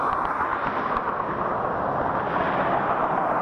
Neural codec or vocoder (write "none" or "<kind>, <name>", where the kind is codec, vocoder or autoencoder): none